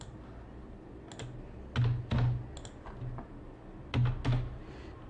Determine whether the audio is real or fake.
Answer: real